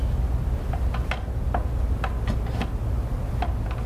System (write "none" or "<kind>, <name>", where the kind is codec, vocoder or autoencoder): none